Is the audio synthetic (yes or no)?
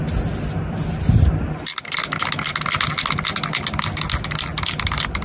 no